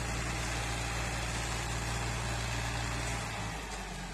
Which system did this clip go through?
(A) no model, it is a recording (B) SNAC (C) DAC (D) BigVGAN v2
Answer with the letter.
A